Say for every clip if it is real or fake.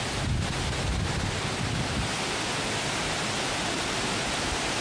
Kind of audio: real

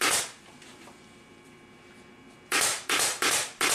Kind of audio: fake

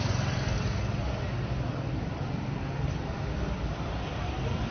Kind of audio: fake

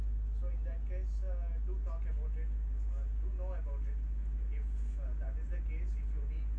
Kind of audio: real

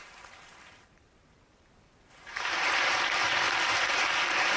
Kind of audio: fake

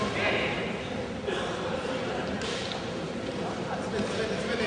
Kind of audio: fake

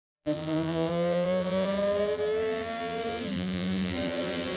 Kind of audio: fake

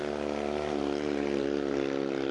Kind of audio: real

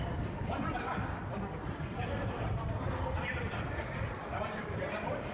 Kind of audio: fake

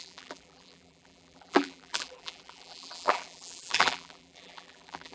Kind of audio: fake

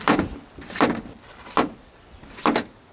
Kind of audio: fake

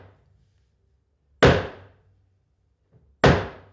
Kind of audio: real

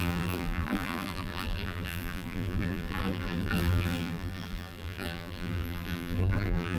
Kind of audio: fake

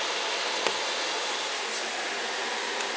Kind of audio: real